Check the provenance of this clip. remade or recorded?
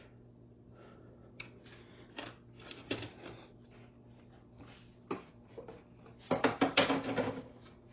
recorded